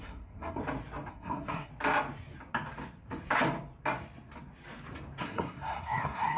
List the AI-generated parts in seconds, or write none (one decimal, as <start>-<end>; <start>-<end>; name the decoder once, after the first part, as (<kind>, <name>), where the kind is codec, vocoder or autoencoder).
0.0-0.6 (codec, SNAC); 1.1-1.7; 5.2-6.4